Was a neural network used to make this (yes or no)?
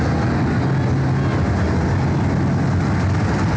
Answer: no